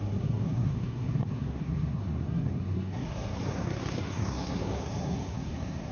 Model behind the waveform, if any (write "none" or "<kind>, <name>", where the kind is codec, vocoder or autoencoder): codec, SNAC